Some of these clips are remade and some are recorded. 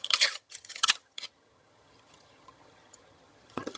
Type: remade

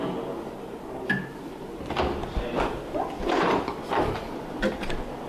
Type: recorded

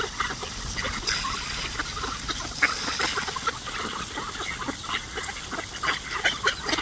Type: recorded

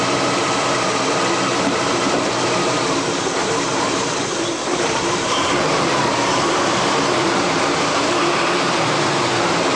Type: remade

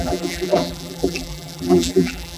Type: remade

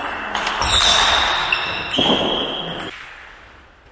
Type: recorded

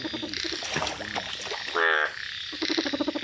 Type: recorded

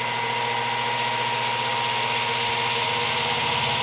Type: recorded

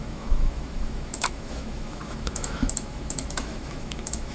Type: remade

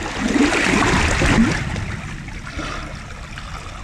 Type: recorded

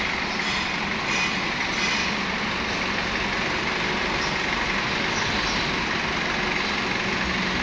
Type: recorded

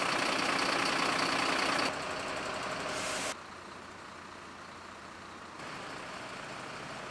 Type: recorded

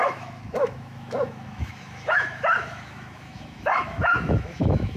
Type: remade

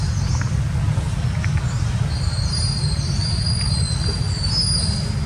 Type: recorded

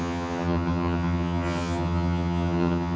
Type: remade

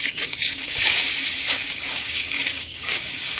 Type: remade